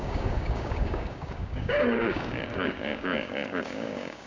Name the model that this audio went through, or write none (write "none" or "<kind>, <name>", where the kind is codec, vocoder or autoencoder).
codec, DAC